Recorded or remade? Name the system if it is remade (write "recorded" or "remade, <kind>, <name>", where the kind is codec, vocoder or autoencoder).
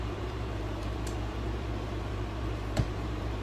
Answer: remade, vocoder, BigVGAN v2